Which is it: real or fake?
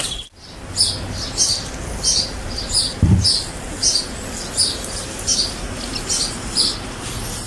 real